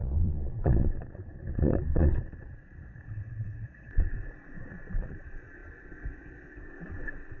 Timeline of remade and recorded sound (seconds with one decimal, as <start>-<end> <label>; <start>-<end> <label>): 0.0-7.4 remade